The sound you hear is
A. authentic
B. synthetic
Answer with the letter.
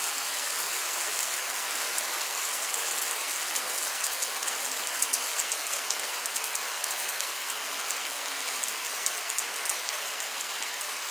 B